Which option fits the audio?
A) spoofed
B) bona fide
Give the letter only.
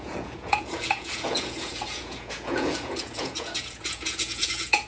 A